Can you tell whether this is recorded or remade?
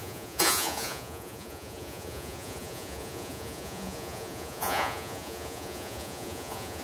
remade